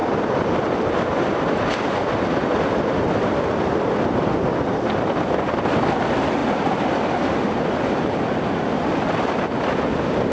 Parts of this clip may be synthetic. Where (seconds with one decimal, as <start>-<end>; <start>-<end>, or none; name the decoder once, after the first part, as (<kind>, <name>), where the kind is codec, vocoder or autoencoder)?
none